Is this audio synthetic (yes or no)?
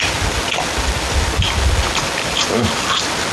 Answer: no